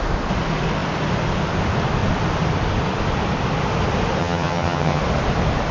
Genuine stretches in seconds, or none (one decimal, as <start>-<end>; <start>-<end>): 0.0-4.2; 5.0-5.7